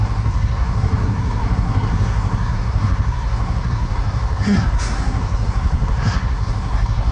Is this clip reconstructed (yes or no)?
yes